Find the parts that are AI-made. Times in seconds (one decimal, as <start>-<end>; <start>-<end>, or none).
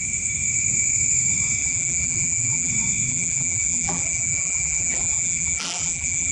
1.6-2.7; 3.1-6.3